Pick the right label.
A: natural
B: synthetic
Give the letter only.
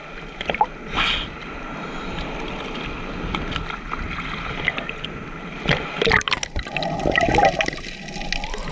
A